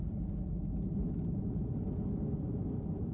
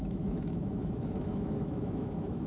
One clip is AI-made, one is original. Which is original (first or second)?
first